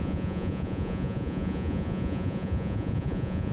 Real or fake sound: fake